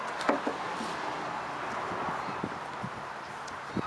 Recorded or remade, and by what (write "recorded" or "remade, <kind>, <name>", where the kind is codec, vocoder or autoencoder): recorded